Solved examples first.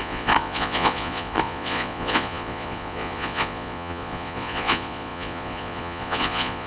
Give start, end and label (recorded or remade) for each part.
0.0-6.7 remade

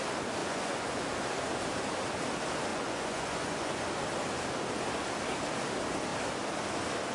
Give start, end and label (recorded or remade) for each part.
0.0-0.4 recorded; 0.4-1.0 remade; 1.0-2.7 recorded; 2.7-3.9 remade; 3.9-7.1 recorded